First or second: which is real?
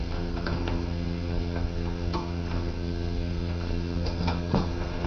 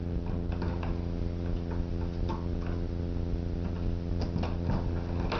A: second